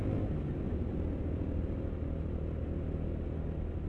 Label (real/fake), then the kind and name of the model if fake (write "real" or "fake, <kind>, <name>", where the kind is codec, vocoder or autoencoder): real